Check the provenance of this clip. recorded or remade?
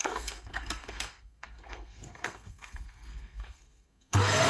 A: remade